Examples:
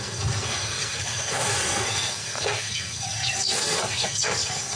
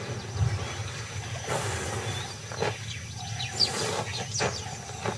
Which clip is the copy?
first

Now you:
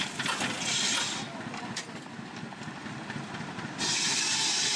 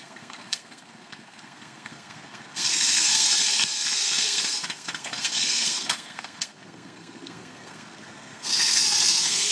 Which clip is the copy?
second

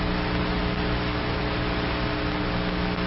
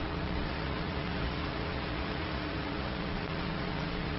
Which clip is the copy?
second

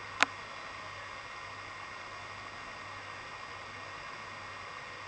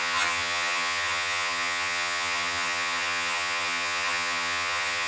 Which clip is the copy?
second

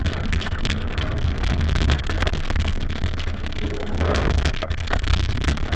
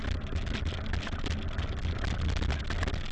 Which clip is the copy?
first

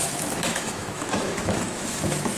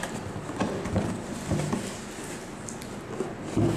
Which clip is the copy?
first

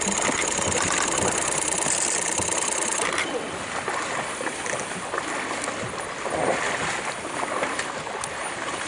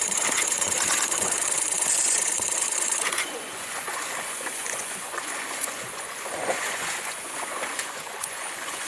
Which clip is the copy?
second